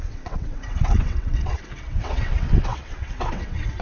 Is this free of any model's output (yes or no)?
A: no